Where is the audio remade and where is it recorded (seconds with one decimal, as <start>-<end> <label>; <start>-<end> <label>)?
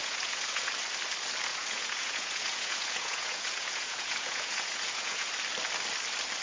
0.0-0.7 remade; 0.7-1.5 recorded; 1.5-5.3 remade; 5.3-6.4 recorded